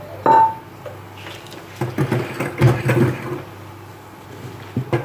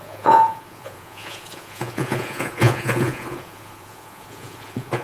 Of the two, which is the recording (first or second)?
first